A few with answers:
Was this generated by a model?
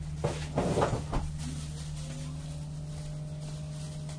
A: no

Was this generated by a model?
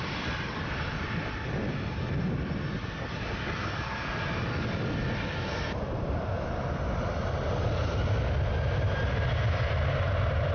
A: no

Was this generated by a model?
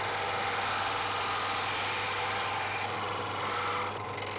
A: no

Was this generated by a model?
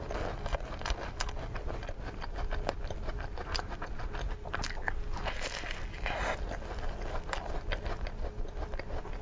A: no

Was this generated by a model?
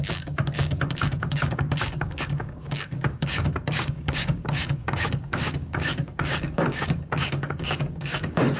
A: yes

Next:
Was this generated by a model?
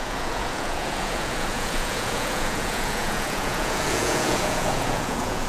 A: yes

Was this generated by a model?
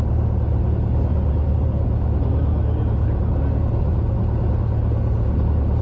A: no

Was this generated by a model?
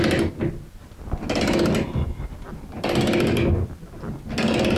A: no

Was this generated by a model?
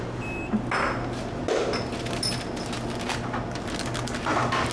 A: no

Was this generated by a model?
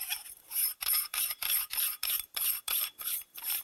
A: yes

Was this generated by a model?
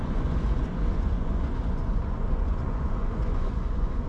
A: yes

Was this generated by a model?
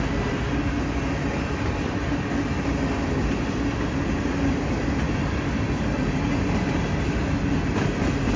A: no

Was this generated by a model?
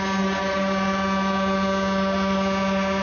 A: no